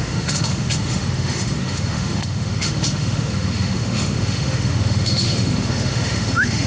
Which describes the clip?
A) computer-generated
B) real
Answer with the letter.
A